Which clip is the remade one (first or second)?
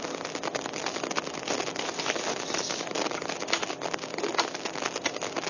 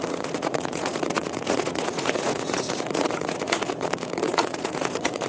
second